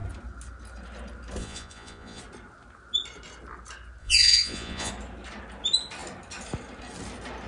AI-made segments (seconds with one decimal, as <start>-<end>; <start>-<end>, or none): 1.4-2.2; 4.0-4.9